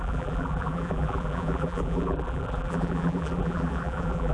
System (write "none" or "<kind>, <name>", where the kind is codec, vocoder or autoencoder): vocoder, BigVGAN v2